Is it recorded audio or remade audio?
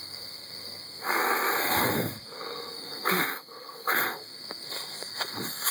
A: remade